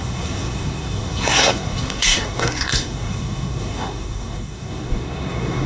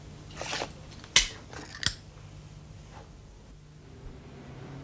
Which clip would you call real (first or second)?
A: second